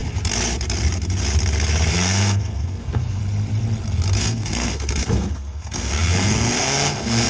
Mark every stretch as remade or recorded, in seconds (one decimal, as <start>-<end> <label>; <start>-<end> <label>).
0.0-1.9 recorded; 1.9-3.2 remade; 3.2-4.2 recorded; 4.2-7.3 remade